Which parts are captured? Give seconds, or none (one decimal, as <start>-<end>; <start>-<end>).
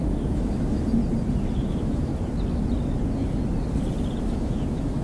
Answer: 1.0-1.6; 2.1-4.2